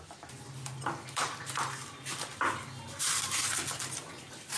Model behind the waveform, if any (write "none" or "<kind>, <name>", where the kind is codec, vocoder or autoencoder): none